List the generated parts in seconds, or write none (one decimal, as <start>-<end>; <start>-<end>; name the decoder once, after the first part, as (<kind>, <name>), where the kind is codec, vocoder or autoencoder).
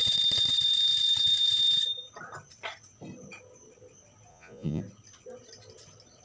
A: 4.3-4.8 (vocoder, Vocos)